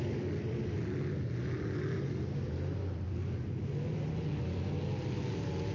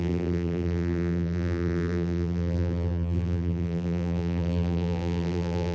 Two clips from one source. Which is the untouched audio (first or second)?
first